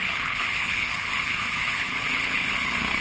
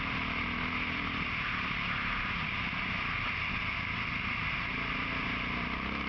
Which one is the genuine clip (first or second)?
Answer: second